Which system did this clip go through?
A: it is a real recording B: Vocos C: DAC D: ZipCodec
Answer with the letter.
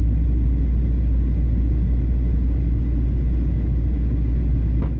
A